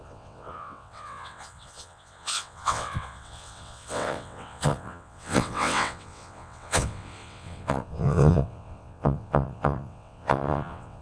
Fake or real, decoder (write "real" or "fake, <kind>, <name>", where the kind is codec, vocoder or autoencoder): fake, vocoder, WaveNeXt